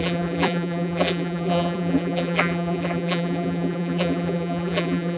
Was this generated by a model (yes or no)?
yes